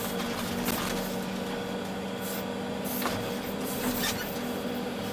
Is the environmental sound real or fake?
real